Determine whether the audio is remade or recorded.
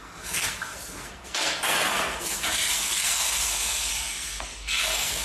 remade